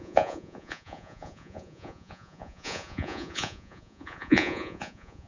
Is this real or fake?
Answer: fake